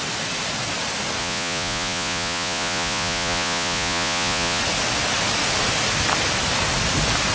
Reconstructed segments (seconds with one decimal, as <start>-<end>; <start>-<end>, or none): 1.2-4.6